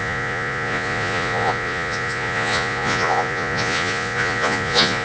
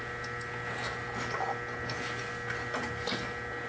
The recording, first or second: second